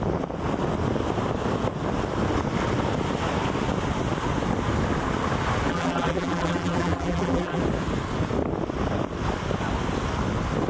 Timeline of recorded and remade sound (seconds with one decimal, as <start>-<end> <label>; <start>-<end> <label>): 0.0-5.7 recorded; 5.7-7.6 remade; 7.6-10.7 recorded